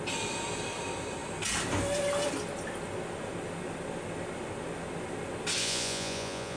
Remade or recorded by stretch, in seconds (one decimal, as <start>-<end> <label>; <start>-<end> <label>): 0.0-5.6 recorded; 5.6-6.6 remade